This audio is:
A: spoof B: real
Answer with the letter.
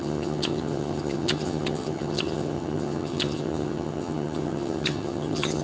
A